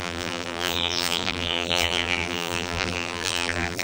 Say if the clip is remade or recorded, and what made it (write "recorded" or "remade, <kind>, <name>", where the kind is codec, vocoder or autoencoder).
remade, vocoder, BigVGAN v2